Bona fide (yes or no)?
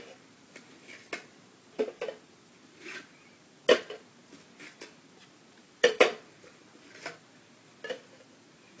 yes